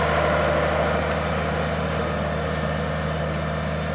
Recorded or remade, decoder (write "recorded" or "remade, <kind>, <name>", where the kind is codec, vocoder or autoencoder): recorded